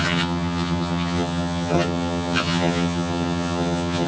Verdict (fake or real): fake